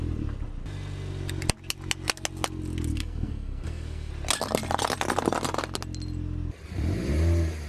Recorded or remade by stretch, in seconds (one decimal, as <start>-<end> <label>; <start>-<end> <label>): 0.0-2.9 recorded; 2.9-4.1 remade; 4.1-7.7 recorded